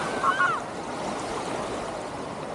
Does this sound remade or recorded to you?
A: recorded